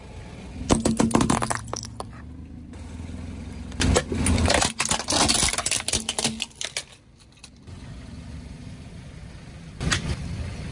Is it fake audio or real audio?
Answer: real